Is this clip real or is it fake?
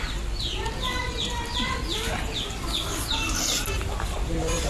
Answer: real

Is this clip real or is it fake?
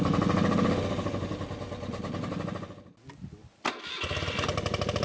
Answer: real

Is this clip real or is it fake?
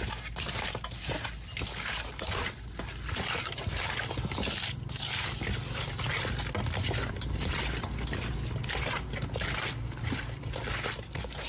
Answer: real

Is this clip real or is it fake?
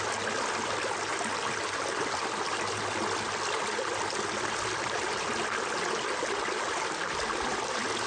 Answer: real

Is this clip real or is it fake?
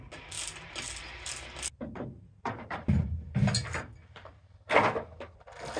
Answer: real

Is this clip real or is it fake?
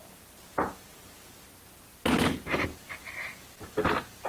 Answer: real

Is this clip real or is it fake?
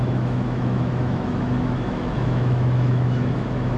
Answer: fake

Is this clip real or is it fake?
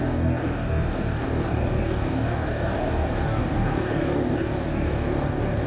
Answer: fake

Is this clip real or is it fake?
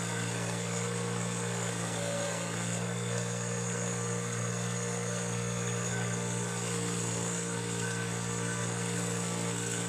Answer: fake